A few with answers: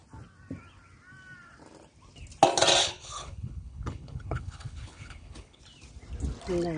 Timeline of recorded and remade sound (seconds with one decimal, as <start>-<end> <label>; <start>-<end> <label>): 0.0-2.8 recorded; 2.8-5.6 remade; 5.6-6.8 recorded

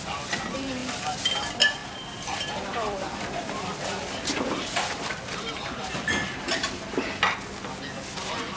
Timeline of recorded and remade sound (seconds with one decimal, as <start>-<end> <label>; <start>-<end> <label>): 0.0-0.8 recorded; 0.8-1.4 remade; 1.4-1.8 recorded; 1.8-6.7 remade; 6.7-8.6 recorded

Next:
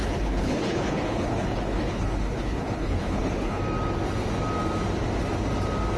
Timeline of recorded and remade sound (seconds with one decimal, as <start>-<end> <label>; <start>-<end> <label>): 0.0-3.6 remade; 3.6-6.0 recorded

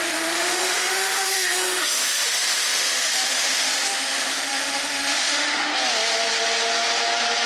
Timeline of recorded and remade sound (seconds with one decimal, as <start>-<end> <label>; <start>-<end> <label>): 0.0-5.7 remade; 5.7-7.5 recorded

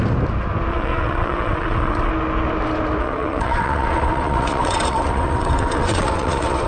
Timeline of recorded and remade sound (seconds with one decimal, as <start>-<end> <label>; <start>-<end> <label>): 0.0-0.7 recorded; 0.7-2.1 remade; 2.1-3.0 recorded; 3.0-6.7 remade

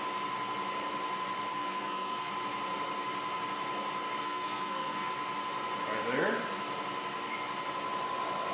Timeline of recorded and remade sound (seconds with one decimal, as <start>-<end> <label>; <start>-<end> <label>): 0.0-1.5 recorded; 1.5-2.3 remade; 2.3-4.2 recorded; 4.2-5.1 remade; 5.1-8.5 recorded

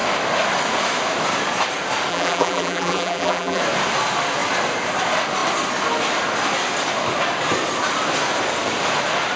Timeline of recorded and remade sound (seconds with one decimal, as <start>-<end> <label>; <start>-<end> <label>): 0.0-2.1 recorded; 2.1-3.6 remade; 3.6-9.4 recorded

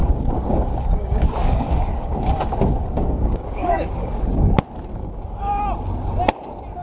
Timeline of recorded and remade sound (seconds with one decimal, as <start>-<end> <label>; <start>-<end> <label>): 0.0-4.1 remade; 4.1-5.0 recorded; 5.0-5.6 remade; 5.6-6.8 recorded